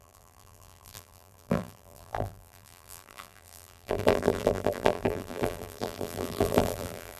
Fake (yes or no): yes